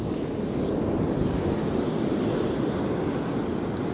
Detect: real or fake real